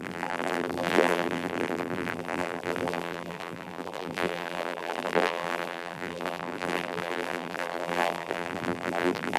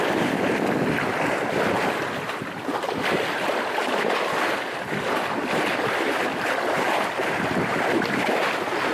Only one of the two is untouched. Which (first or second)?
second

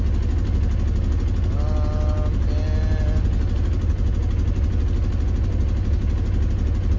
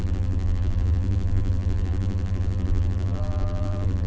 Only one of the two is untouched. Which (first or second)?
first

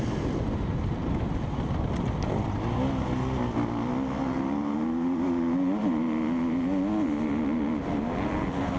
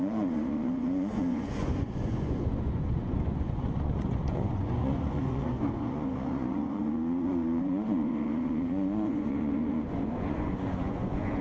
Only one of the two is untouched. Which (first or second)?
first